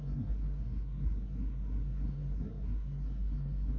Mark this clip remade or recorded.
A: remade